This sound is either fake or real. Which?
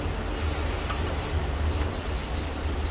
real